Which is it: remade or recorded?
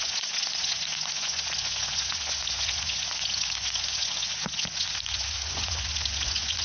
remade